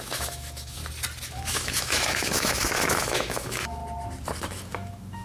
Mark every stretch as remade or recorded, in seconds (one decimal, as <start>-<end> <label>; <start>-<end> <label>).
0.0-0.8 remade; 0.8-1.3 recorded; 1.3-3.8 remade; 3.8-4.4 recorded; 4.4-5.2 remade